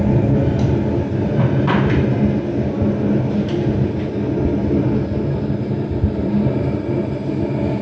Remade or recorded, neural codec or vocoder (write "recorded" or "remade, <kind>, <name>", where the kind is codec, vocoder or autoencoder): recorded